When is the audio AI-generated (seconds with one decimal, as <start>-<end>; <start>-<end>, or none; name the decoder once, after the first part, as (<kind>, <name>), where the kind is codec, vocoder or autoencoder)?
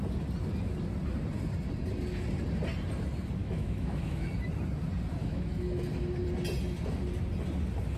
3.4-4.3 (autoencoder, DAC-VAE); 5.2-5.8